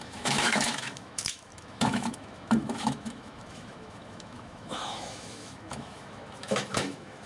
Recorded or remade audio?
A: remade